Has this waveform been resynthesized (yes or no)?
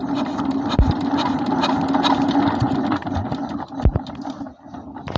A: no